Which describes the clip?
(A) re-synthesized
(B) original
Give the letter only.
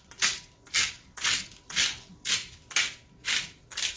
B